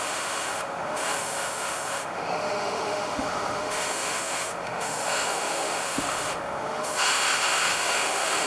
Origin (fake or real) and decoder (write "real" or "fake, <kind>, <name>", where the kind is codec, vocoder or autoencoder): fake, autoencoder, DAC-VAE